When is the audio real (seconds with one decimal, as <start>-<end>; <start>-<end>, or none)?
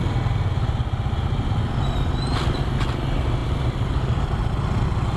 0.0-5.2